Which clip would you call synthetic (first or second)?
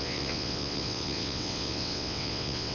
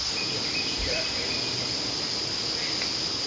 first